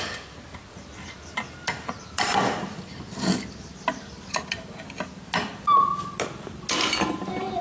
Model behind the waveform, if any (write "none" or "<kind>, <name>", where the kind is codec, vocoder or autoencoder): none